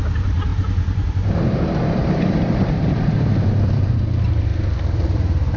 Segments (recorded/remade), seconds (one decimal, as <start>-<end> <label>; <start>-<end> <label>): 0.0-0.5 recorded; 0.5-3.9 remade; 3.9-4.5 recorded; 4.5-5.6 remade